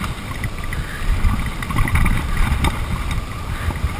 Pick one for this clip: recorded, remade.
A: recorded